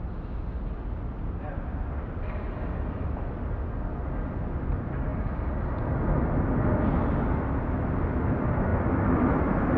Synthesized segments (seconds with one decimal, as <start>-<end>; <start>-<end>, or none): 8.7-9.4